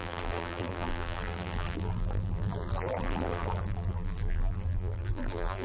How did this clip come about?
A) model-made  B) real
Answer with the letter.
A